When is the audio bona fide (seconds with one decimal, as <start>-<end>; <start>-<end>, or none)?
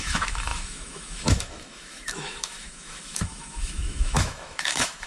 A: none